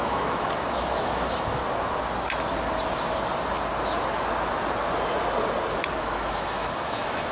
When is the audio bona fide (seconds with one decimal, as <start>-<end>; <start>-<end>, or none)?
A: 1.6-6.0